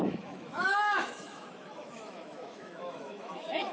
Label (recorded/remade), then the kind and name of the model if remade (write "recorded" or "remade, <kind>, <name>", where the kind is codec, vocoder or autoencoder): remade, autoencoder, DAC-VAE